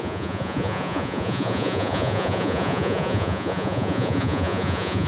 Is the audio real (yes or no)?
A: no